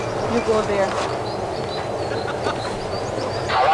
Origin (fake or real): real